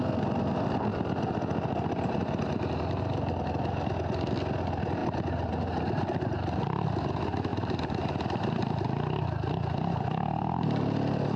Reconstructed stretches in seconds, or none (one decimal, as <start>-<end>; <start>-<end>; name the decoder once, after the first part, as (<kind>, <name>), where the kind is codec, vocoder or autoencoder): none